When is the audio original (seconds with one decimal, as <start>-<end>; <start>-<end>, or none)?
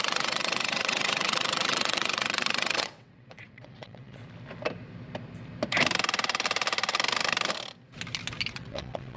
4.2-8.5